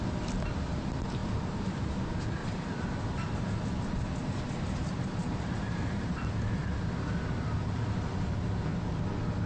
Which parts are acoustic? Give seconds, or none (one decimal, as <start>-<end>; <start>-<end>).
0.0-2.4; 3.4-5.2; 6.1-9.5